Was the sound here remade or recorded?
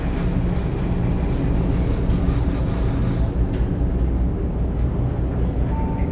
recorded